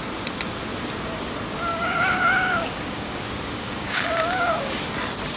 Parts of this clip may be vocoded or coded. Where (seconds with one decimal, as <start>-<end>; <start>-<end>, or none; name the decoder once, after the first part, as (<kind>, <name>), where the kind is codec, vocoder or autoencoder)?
1.7-4.8 (codec, DAC)